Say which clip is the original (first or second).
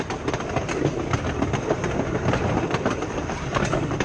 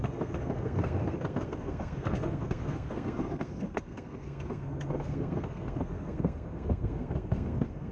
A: first